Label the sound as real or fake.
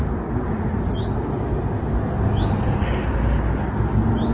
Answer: real